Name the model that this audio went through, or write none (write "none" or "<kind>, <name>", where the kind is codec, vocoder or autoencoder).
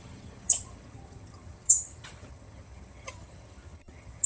vocoder, HiFi-GAN